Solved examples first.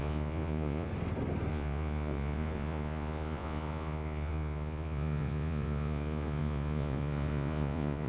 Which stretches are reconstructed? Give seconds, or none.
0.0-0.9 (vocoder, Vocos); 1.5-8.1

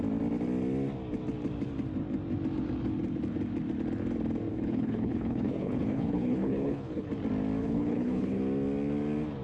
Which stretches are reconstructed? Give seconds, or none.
4.5-7.1 (codec, HILCodec); 7.6-8.4

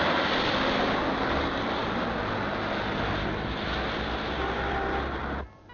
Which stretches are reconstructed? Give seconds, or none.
none

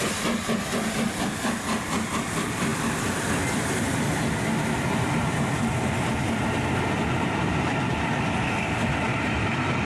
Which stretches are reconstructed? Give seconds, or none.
none